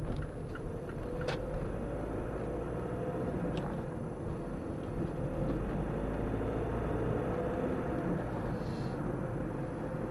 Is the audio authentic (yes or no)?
yes